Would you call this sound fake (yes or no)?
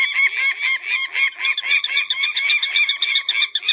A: yes